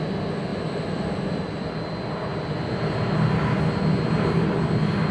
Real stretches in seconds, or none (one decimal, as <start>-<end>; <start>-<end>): 0.0-5.1